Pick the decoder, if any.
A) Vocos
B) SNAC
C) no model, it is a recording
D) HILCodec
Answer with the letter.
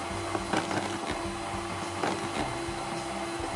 C